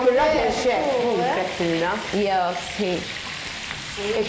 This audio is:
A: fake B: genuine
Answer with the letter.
B